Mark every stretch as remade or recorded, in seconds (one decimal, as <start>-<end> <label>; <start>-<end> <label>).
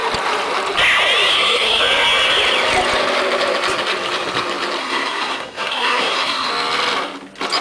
0.0-1.3 recorded; 1.3-1.8 remade; 1.8-4.8 recorded; 4.8-6.5 remade; 6.5-7.6 recorded